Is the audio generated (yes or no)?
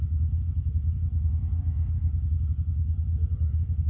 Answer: no